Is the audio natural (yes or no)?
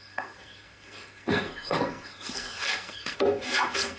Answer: no